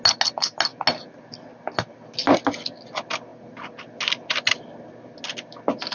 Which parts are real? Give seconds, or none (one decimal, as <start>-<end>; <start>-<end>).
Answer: 0.0-5.9